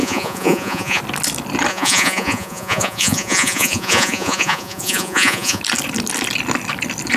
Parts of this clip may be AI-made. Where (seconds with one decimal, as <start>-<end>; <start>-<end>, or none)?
0.0-1.0; 1.7-5.6

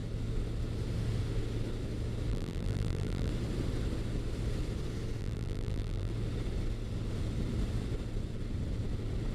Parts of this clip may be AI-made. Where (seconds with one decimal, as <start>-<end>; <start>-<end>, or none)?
2.3-3.3; 5.2-6.1

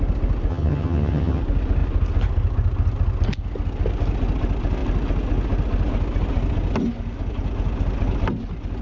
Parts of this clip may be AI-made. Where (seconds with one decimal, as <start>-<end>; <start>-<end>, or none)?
0.5-1.4